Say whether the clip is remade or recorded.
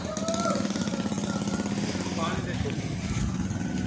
recorded